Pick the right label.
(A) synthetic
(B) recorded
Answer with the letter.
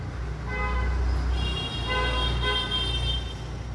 B